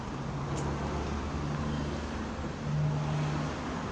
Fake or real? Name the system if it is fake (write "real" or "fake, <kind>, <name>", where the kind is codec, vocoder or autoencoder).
real